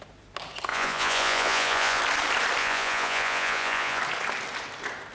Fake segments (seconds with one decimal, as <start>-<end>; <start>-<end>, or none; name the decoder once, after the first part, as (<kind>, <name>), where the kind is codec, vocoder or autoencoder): 0.7-2.0 (vocoder, Vocos); 2.6-4.0